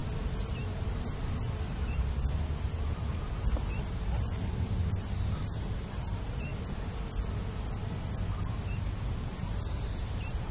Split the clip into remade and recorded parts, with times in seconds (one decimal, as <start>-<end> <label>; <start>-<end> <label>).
0.0-6.5 remade; 6.5-8.7 recorded; 8.7-10.5 remade

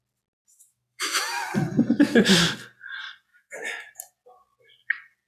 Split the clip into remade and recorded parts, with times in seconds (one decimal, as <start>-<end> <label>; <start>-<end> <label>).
0.0-0.5 recorded; 0.5-1.2 remade; 1.2-3.3 recorded; 3.3-3.9 remade; 3.9-5.3 recorded

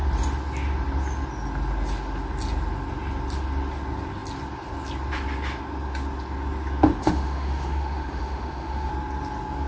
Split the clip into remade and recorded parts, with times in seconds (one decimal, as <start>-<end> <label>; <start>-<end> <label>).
0.0-7.0 recorded; 7.0-8.9 remade; 8.9-9.7 recorded